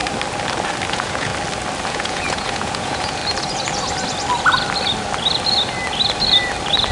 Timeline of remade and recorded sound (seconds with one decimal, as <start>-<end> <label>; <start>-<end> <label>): 0.0-0.9 recorded; 0.9-1.3 remade; 1.3-1.9 recorded; 1.9-3.2 remade; 3.2-6.9 recorded